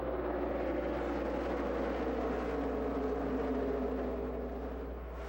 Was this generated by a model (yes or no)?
no